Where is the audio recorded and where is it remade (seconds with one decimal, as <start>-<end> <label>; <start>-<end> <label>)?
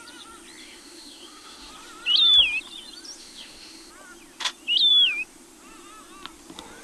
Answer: 0.0-0.6 recorded; 0.6-1.7 remade; 1.7-3.2 recorded; 3.2-3.9 remade; 3.9-6.8 recorded